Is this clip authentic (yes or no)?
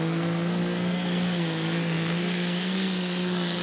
no